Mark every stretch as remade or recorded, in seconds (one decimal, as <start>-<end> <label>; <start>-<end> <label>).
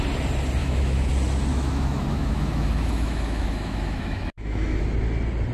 0.0-0.6 recorded; 0.6-1.1 remade; 1.1-1.5 recorded; 1.5-4.8 remade; 4.8-5.5 recorded